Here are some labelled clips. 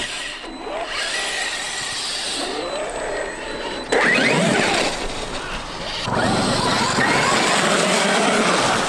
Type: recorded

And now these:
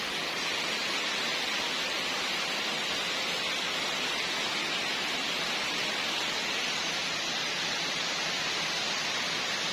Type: recorded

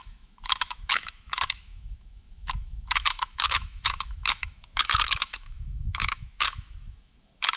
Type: remade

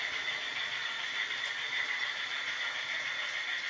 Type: recorded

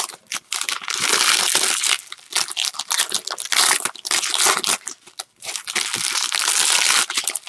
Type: recorded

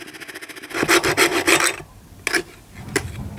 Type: recorded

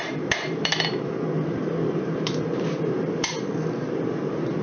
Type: remade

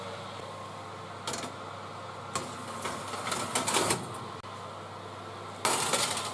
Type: recorded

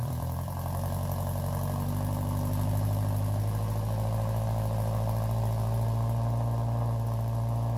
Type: remade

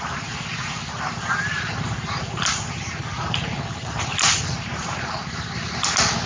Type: remade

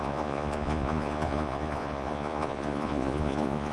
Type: remade